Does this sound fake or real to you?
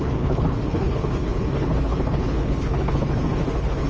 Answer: fake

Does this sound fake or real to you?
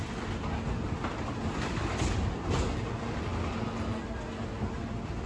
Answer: real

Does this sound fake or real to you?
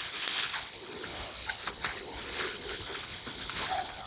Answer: fake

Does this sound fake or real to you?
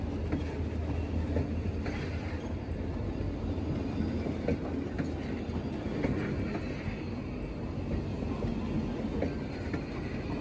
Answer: real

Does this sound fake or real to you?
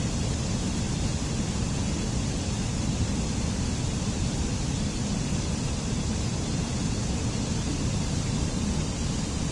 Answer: real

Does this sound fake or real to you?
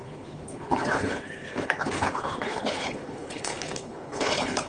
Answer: fake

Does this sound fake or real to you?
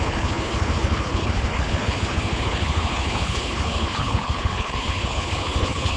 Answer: fake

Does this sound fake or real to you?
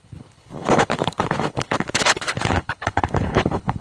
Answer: fake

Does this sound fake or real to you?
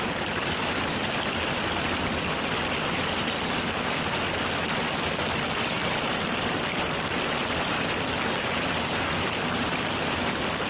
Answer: real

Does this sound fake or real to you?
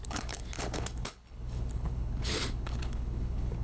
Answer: fake